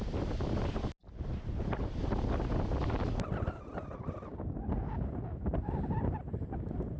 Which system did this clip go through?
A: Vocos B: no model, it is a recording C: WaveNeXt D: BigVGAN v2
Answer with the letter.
B